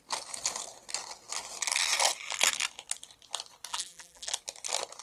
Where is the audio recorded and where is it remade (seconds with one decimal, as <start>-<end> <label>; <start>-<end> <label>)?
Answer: 0.0-3.7 recorded; 3.7-4.3 remade; 4.3-5.0 recorded